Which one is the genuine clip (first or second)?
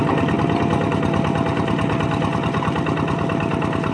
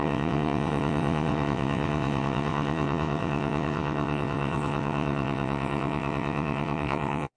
first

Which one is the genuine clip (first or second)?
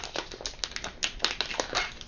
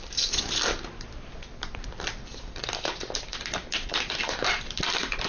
first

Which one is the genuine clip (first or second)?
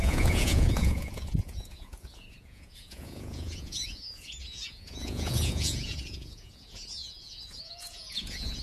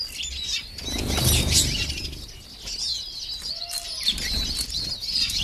second